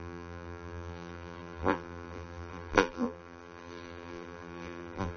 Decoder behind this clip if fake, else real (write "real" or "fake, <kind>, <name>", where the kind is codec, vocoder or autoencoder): fake, vocoder, BigVGAN v2